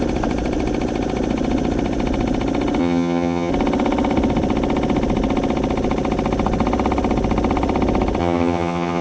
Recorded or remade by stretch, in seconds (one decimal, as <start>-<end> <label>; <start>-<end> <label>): 0.0-2.8 recorded; 2.8-3.5 remade; 3.5-8.2 recorded; 8.2-9.0 remade